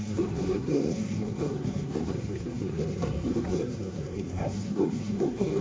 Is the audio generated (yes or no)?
yes